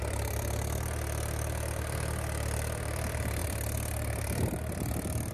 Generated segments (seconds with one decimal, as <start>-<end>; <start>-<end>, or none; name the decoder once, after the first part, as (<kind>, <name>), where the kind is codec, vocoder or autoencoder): 0.0-5.3 (vocoder, BigVGAN v2)